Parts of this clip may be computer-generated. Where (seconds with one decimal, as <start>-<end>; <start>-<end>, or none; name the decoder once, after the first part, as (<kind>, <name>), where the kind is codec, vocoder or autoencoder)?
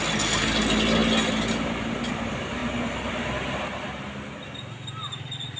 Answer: none